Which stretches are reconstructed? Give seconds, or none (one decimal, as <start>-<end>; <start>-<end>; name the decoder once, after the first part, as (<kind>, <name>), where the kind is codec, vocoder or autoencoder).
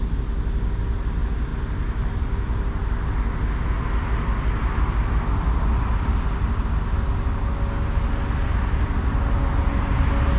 none